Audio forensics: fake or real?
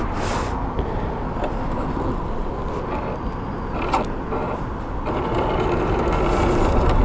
real